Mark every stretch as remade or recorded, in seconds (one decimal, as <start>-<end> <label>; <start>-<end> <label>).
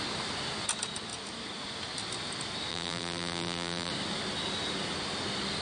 0.0-2.7 recorded; 2.7-3.9 remade; 3.9-5.6 recorded